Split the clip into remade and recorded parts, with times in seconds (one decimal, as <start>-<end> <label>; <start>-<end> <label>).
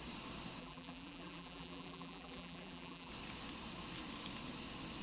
0.0-0.6 recorded; 0.6-3.1 remade; 3.1-5.0 recorded